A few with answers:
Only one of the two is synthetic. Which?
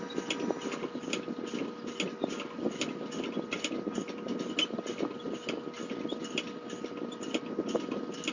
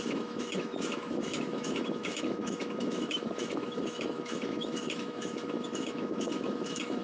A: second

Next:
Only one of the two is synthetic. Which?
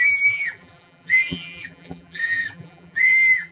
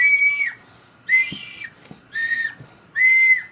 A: first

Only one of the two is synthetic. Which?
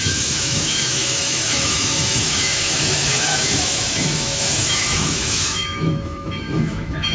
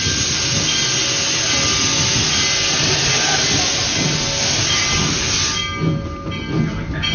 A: first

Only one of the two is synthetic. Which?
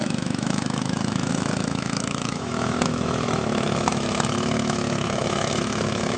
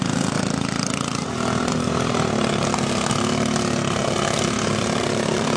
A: first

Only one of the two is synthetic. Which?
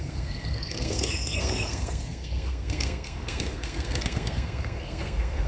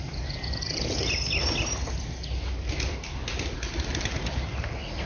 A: first